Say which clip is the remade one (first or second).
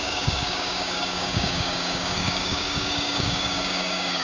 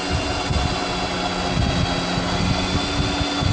first